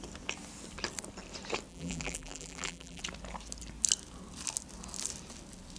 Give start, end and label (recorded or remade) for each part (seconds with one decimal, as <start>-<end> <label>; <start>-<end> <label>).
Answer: 0.0-1.7 recorded; 1.7-3.0 remade; 3.0-5.8 recorded